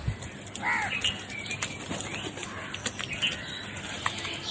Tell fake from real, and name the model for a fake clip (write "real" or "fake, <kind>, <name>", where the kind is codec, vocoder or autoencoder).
real